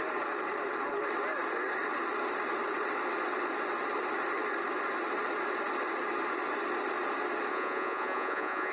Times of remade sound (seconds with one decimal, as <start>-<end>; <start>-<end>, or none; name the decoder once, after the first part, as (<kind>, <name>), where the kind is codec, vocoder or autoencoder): 7.5-8.7 (vocoder, Vocos)